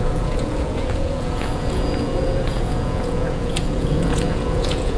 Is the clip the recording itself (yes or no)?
no